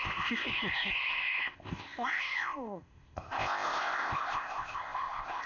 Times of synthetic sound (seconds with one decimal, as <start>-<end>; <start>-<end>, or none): 0.0-5.5

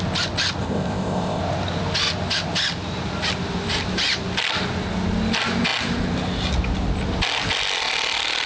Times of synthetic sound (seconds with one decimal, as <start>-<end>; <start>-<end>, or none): 0.6-1.4

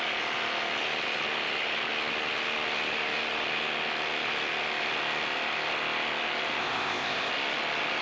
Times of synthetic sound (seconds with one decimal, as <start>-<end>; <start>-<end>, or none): 6.6-7.3

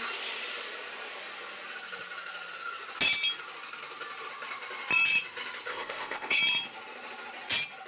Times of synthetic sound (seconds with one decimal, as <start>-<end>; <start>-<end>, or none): 5.7-6.4

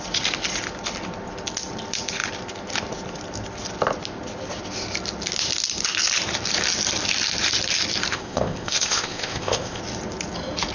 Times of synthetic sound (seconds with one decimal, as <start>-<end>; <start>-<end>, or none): 8.1-9.8

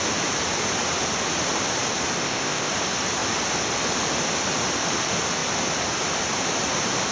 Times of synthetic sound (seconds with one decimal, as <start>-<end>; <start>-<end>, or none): 2.2-2.7